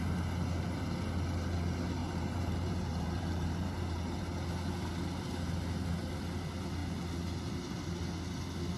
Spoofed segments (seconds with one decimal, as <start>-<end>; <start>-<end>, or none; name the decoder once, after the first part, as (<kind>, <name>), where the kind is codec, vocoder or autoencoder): 2.0-4.2 (vocoder, BigVGAN v2)